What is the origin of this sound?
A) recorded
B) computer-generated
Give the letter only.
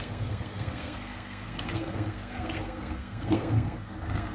B